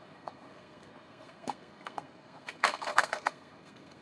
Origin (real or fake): fake